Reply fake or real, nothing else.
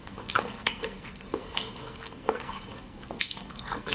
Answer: fake